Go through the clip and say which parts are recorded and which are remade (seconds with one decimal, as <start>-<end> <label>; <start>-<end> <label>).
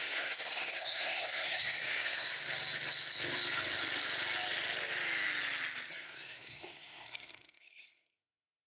0.0-2.3 remade; 2.3-5.9 recorded; 5.9-8.7 remade